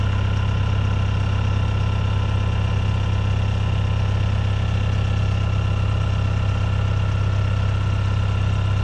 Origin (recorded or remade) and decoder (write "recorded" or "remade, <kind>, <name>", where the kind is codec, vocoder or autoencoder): recorded